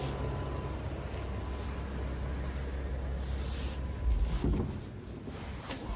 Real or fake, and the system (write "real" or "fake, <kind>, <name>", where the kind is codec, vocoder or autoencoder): real